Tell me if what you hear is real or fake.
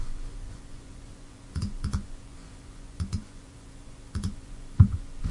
fake